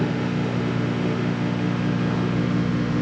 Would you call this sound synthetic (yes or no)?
yes